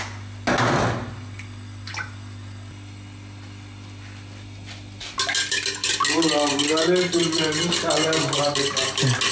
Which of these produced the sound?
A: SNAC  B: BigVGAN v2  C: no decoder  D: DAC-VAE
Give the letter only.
C